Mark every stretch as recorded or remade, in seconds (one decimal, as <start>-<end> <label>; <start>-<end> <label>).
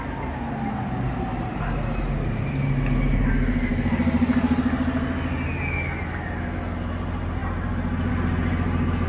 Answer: 0.0-9.1 recorded